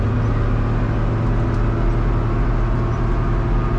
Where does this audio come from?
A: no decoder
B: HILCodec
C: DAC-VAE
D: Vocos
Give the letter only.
A